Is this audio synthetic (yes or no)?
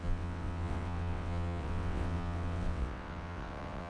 yes